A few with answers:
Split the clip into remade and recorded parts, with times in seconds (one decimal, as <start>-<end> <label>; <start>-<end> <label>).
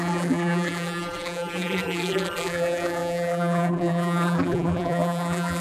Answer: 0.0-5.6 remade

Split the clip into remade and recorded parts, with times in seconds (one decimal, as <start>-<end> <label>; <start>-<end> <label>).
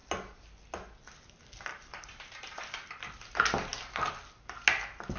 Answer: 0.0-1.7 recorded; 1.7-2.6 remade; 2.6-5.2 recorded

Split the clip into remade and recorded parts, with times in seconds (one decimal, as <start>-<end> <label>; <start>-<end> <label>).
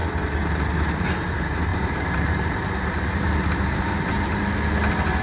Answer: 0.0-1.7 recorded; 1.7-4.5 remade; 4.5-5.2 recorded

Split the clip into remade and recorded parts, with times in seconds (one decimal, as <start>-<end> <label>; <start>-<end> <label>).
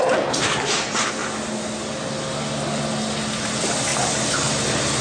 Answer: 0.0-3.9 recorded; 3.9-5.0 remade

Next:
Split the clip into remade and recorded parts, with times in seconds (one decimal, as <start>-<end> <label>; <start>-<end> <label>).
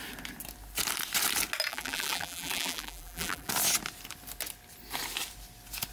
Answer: 0.0-1.7 recorded; 1.7-3.5 remade; 3.5-5.9 recorded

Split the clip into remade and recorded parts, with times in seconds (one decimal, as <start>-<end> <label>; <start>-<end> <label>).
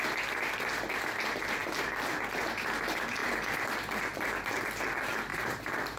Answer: 0.0-5.3 recorded; 5.3-6.0 remade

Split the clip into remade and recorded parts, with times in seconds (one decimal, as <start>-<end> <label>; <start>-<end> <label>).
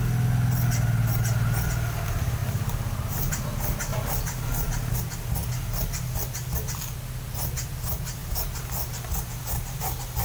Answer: 0.0-2.4 recorded; 2.4-3.3 remade; 3.3-3.9 recorded; 3.9-4.9 remade; 4.9-8.2 recorded; 8.2-8.7 remade; 8.7-10.2 recorded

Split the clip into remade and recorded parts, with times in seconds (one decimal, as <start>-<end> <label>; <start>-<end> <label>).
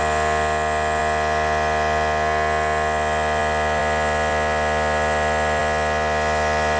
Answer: 0.0-6.8 recorded